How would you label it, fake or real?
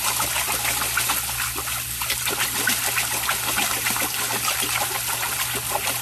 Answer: real